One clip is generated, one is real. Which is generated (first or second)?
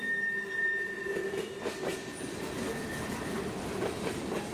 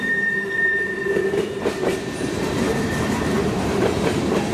second